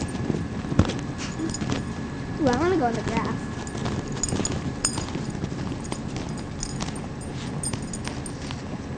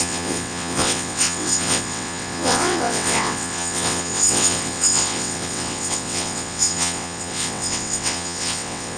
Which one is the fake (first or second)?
second